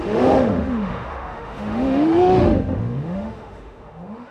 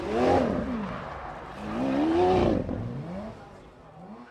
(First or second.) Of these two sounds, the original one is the second